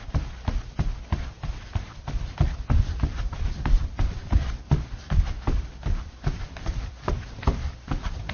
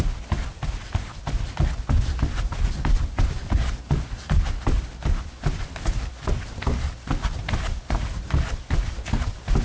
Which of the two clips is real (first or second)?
second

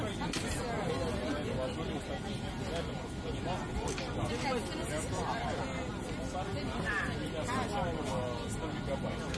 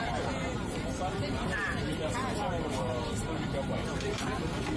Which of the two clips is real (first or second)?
first